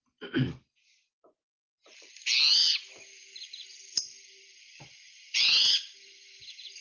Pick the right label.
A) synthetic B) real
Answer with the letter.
B